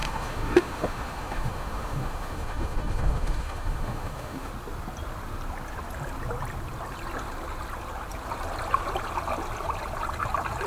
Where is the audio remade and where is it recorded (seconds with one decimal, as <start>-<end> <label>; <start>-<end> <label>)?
0.0-4.5 remade; 4.5-10.7 recorded